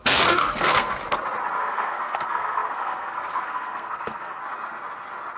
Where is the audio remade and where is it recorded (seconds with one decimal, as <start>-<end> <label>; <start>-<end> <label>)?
0.0-1.0 remade; 1.0-1.6 recorded; 1.6-4.4 remade; 4.4-5.4 recorded